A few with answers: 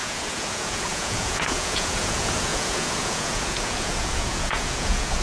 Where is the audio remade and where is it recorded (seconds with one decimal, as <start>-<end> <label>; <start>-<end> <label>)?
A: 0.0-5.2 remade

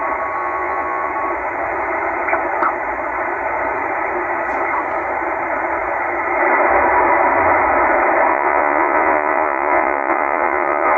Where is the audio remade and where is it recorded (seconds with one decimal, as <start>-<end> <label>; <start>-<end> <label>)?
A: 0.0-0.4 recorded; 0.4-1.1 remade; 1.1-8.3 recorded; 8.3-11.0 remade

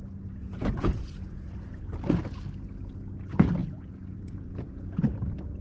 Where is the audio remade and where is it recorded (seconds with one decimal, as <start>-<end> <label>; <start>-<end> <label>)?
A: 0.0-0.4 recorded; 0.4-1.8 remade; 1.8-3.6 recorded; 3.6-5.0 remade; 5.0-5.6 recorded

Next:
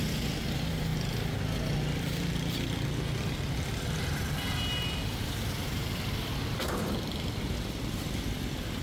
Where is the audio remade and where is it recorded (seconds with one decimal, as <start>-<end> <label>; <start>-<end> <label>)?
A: 0.0-5.8 recorded; 5.8-8.0 remade; 8.0-8.8 recorded

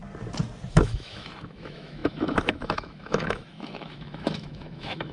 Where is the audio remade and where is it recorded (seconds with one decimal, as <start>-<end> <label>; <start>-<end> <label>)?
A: 0.0-0.7 recorded; 0.7-5.1 remade

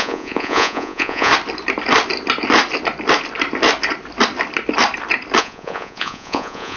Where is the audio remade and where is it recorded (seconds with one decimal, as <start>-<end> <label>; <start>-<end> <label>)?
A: 0.0-1.3 remade; 1.3-5.4 recorded; 5.4-6.8 remade